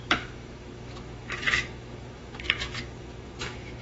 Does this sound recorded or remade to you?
remade